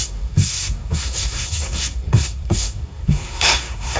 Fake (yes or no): yes